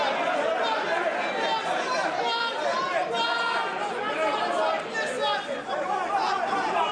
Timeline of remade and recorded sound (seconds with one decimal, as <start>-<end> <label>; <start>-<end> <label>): 0.0-6.9 recorded